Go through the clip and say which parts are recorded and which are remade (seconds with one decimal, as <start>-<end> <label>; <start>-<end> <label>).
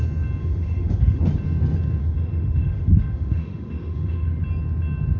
0.0-0.4 recorded; 0.4-1.2 remade; 1.2-2.0 recorded; 2.0-4.4 remade; 4.4-5.2 recorded